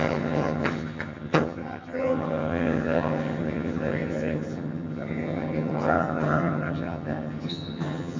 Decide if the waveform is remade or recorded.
remade